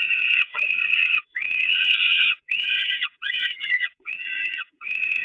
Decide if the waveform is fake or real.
fake